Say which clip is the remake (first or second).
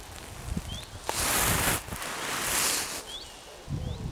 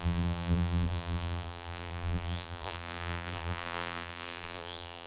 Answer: second